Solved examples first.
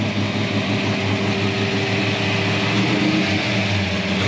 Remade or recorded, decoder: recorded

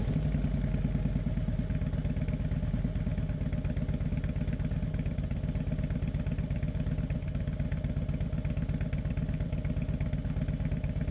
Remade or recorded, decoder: recorded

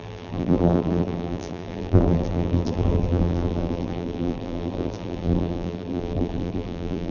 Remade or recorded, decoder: remade, vocoder, BigVGAN v2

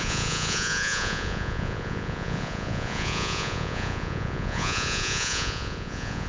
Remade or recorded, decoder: remade, vocoder, Vocos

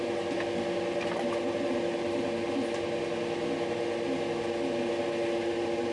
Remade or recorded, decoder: recorded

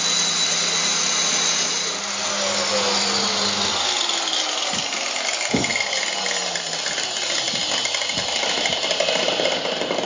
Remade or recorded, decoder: recorded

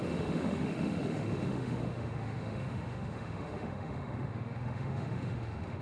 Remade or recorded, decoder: remade, autoencoder, DAC-VAE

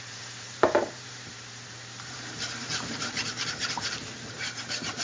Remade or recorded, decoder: remade, vocoder, BigVGAN v2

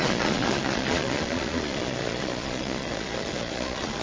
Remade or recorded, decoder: remade, vocoder, Vocos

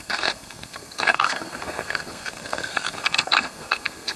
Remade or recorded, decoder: remade, codec, SNAC